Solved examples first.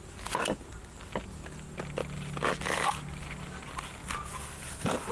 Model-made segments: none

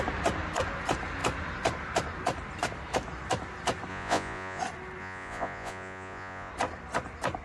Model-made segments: 3.9-4.6 (vocoder, Vocos); 5.0-6.5

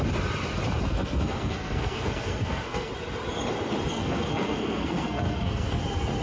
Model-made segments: 0.9-2.9 (codec, SNAC); 3.9-5.8